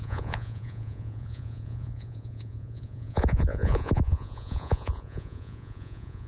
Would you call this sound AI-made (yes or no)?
yes